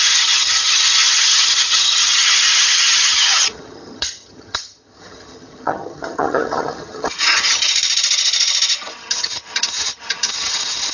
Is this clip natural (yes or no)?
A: no